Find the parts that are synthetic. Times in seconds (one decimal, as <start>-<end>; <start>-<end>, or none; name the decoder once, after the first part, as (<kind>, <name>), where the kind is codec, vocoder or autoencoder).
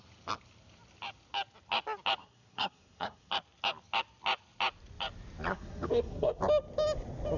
2.2-3.3 (codec, SNAC); 5.5-6.4